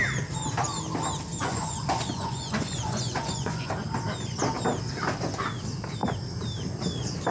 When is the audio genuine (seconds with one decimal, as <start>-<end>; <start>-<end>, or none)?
0.0-1.3; 3.7-7.3